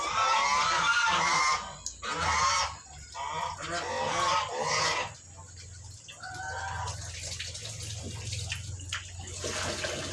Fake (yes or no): no